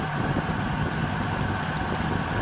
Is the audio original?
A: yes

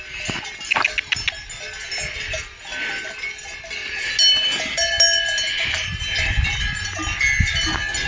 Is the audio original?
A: yes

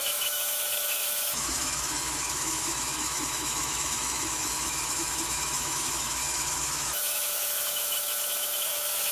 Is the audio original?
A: no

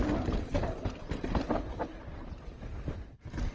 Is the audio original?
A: yes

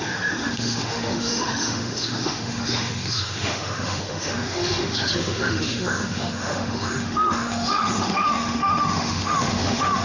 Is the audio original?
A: no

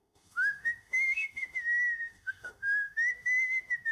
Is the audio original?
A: no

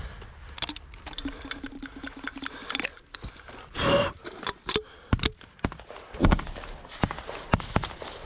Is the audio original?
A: yes